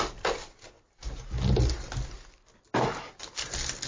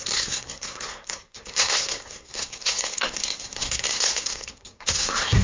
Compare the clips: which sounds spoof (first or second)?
second